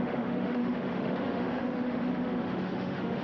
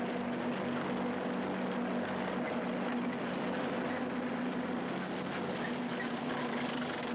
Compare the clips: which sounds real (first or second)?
second